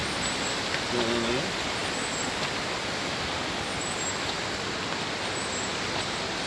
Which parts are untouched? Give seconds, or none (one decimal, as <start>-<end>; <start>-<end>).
0.0-6.5